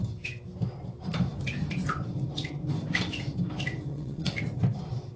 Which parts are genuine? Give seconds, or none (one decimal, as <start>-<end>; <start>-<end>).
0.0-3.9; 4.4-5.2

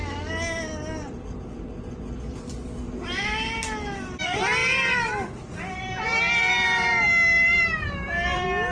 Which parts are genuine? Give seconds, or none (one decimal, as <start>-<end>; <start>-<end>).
0.0-8.7

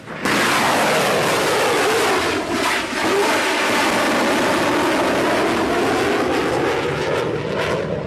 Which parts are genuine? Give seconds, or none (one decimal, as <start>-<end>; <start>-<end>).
0.0-8.1

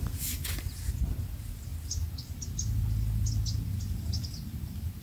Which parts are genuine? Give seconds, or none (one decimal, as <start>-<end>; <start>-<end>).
0.0-5.0